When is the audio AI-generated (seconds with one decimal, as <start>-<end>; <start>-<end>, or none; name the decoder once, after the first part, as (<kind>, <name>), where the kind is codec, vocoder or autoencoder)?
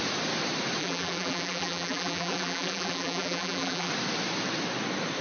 0.8-3.9 (vocoder, BigVGAN v2)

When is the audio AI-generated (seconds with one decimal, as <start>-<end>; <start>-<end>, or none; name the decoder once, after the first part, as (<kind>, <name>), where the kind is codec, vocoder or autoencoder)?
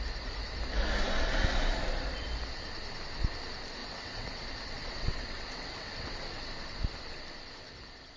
3.8-6.5 (vocoder, WaveNeXt)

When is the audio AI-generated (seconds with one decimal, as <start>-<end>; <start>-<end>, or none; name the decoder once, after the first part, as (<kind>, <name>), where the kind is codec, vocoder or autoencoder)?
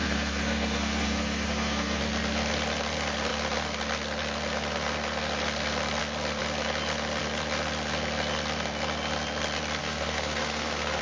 0.0-2.0 (codec, SNAC); 9.8-11.0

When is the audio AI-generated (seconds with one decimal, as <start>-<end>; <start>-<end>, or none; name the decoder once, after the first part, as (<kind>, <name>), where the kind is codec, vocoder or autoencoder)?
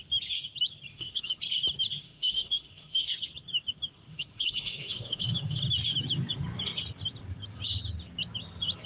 0.9-1.4 (autoencoder, DAC-VAE); 2.0-3.1; 4.1-5.6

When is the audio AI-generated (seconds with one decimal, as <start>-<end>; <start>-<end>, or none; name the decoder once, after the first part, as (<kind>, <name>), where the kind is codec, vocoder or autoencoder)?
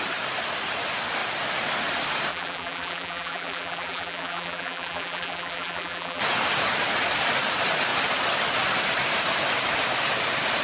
2.3-6.2 (vocoder, BigVGAN v2)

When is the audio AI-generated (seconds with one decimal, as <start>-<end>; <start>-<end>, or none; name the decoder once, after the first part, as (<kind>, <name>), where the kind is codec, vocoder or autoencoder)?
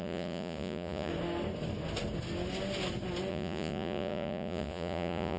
0.0-1.1 (vocoder, Vocos); 3.3-5.4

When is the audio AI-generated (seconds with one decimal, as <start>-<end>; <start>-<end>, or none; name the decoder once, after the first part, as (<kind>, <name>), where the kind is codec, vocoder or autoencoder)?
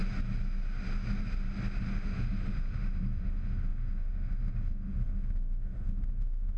1.9-6.6 (autoencoder, DAC-VAE)